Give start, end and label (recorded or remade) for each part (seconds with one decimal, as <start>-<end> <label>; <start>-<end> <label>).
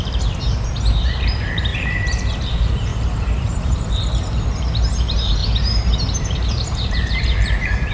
0.0-5.4 remade; 5.4-6.5 recorded; 6.5-7.9 remade